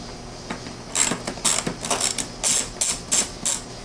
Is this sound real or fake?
real